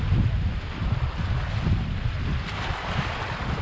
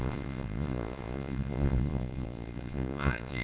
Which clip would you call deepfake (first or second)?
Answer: second